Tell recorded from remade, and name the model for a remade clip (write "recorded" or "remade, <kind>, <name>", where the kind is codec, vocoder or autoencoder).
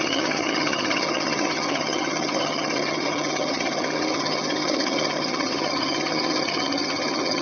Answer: remade, vocoder, HiFi-GAN